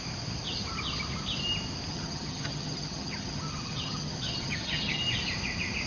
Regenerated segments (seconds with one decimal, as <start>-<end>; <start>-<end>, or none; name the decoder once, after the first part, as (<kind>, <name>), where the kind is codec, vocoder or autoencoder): 1.9-5.0 (vocoder, HiFi-GAN)

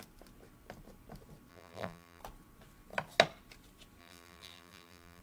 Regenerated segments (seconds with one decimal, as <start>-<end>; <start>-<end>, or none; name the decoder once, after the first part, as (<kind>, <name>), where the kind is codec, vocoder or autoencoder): 1.5-2.2 (vocoder, BigVGAN v2); 4.0-5.2

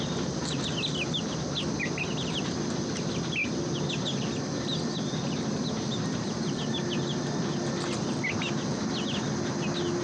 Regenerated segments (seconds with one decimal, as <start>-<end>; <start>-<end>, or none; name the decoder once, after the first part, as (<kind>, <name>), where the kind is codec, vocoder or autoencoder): none

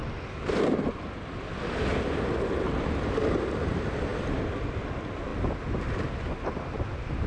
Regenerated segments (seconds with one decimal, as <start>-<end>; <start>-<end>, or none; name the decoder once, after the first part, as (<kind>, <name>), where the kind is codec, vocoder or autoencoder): 0.0-4.1 (vocoder, BigVGAN v2); 4.8-5.3; 6.8-7.3

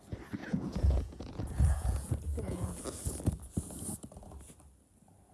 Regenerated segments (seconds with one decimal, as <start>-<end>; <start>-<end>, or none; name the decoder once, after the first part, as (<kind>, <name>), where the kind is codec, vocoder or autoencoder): 0.4-2.8 (vocoder, Vocos)

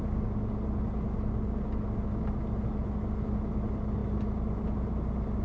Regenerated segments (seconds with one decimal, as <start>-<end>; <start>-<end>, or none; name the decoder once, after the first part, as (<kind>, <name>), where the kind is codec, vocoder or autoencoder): none